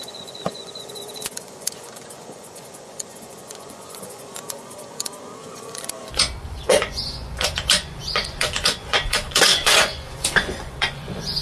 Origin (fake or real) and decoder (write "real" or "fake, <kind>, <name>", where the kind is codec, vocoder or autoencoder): fake, vocoder, Vocos